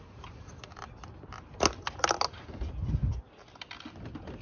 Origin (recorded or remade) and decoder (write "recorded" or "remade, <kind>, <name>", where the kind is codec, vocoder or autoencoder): recorded